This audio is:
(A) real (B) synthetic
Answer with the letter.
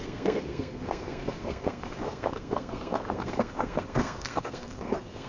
B